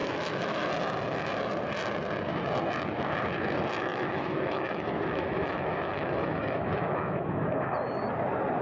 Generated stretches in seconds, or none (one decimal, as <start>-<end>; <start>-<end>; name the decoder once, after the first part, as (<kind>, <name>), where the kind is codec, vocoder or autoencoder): 0.0-0.7 (autoencoder, DAC-VAE); 3.9-7.7